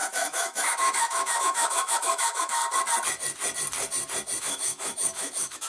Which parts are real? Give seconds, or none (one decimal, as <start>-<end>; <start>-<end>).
2.6-4.4